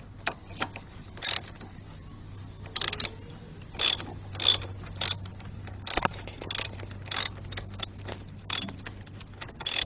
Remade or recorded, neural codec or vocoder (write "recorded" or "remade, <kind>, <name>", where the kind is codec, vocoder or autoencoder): recorded